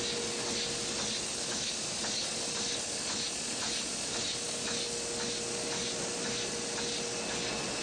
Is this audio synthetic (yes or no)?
no